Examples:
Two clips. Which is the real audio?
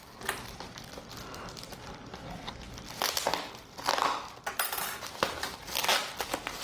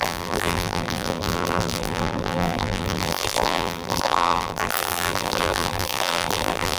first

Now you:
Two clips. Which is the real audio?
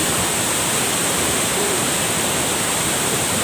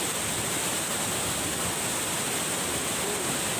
second